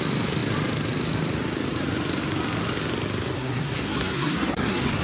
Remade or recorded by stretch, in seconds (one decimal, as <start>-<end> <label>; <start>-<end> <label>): 0.0-3.3 recorded; 3.3-5.0 remade